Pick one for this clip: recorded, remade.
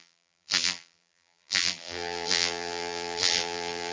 remade